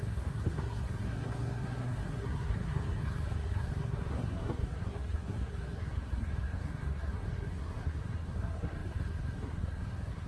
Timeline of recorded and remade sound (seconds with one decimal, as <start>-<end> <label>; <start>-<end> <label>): 0.0-10.3 remade